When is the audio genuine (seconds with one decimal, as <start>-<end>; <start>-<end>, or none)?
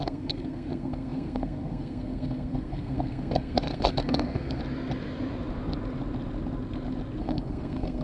4.6-7.2